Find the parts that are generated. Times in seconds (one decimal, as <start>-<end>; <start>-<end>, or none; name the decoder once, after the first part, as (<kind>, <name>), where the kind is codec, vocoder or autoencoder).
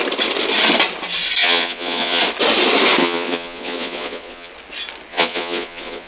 1.4-2.2 (vocoder, Vocos); 3.0-4.5; 5.1-6.1